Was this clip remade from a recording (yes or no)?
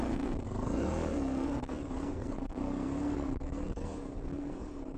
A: yes